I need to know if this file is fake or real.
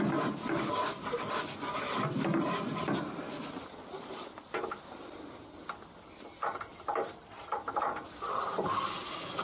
real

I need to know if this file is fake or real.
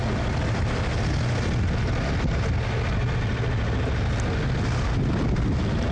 real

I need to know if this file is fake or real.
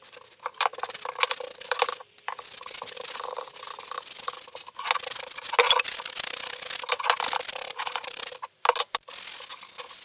real